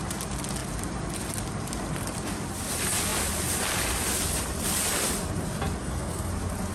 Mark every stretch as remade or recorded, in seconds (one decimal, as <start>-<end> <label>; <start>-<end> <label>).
0.0-5.8 recorded; 5.8-6.3 remade; 6.3-6.7 recorded